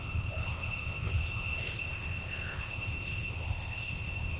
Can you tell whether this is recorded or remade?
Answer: remade